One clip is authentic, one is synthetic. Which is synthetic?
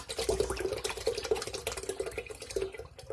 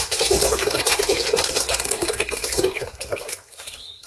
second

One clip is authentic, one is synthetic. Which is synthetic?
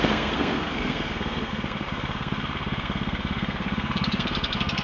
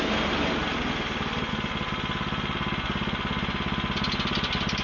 first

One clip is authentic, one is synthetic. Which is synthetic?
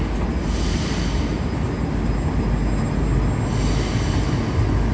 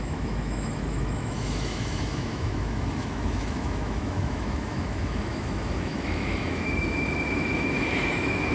second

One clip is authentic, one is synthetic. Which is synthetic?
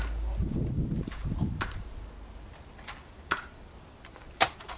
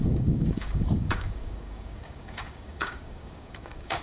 second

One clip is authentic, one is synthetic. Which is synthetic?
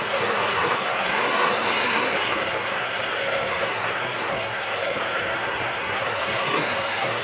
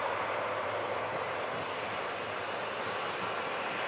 first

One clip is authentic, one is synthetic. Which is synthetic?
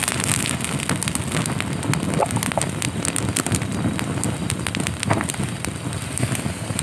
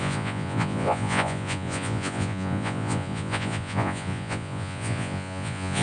second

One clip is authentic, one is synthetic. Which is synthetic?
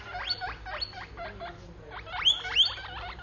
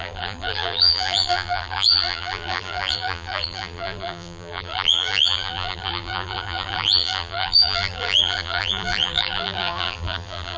second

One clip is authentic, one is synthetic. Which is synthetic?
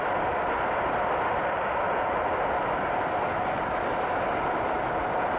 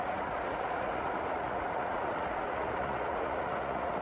second